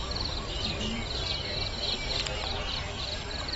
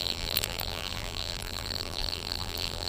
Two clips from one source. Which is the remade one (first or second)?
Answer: second